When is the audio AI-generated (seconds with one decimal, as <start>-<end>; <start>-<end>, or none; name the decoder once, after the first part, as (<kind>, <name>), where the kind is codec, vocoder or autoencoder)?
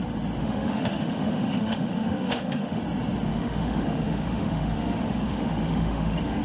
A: 0.4-2.8 (autoencoder, DAC-VAE); 3.3-6.4